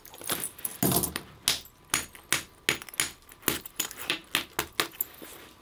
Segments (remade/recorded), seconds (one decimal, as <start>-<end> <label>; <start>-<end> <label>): 0.0-0.7 remade; 0.7-3.6 recorded; 3.6-4.2 remade; 4.2-4.9 recorded; 4.9-5.6 remade